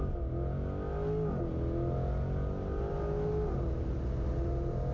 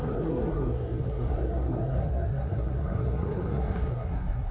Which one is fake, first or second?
second